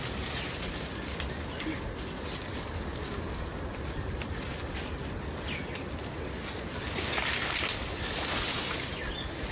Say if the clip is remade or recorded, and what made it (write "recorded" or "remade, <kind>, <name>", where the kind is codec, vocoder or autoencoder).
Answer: recorded